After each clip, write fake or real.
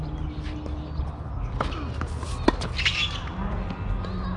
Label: real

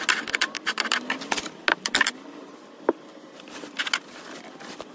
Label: real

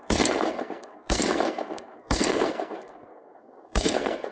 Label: fake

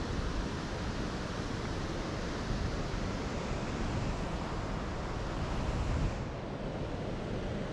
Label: real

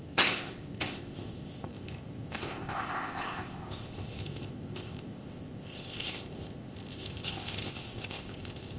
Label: fake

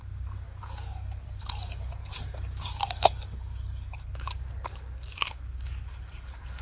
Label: fake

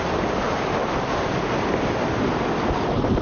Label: real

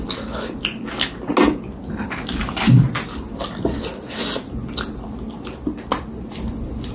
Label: real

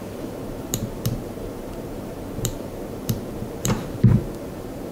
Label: fake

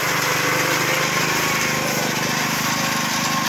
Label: real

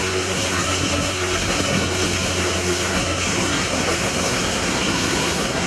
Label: fake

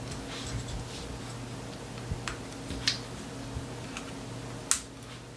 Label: real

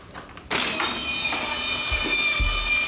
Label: real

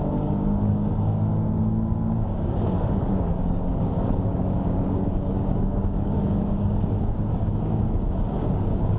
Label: fake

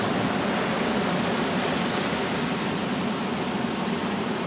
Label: real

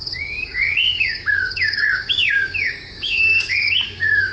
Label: fake